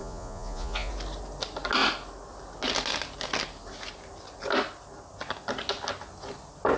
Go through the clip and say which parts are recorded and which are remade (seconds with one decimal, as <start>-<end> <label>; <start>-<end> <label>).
0.0-0.9 remade; 0.9-6.8 recorded